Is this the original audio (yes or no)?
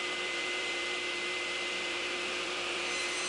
no